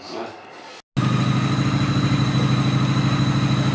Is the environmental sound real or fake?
real